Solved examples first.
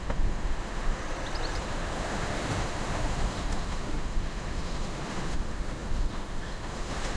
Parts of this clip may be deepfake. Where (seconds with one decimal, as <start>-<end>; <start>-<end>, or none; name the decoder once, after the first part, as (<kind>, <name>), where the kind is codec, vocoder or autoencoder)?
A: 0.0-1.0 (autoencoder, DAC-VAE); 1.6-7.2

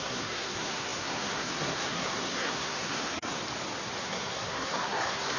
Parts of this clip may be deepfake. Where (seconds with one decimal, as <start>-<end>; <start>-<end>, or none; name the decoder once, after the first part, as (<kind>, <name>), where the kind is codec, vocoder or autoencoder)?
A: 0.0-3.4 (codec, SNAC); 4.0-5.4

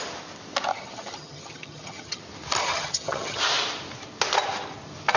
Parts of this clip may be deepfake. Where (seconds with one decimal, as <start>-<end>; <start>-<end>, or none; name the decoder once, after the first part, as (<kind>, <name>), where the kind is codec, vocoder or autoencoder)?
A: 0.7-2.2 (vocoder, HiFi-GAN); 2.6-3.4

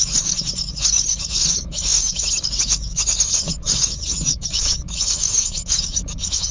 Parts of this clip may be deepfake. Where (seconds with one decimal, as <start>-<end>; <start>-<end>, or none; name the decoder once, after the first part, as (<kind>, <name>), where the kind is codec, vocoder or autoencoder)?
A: 0.0-6.5 (autoencoder, DAC-VAE)